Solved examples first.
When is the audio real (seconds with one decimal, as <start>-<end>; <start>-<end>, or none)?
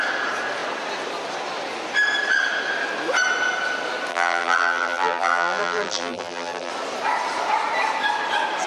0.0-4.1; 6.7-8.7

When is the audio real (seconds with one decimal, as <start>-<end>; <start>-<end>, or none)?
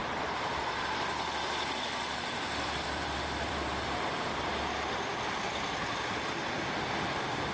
4.5-7.5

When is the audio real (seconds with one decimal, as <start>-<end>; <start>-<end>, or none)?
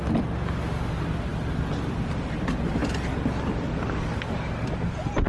0.0-5.3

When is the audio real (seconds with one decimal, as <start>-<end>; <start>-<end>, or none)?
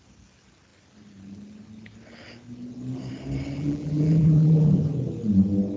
0.0-3.6; 4.8-5.8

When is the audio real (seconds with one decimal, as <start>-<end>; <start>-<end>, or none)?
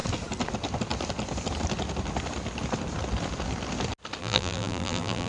0.0-4.2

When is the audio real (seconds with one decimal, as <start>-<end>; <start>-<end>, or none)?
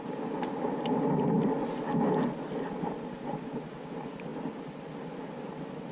0.0-5.9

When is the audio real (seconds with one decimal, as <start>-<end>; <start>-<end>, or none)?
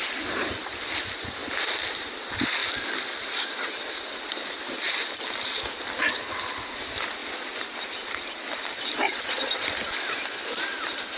0.0-1.4; 2.2-7.2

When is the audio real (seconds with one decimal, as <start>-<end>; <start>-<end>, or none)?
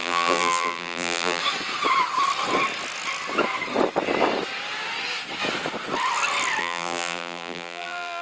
1.4-6.6